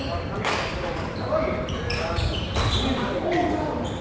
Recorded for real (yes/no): yes